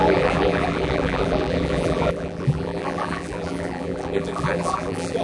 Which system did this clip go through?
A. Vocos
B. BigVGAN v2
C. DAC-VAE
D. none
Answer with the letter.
B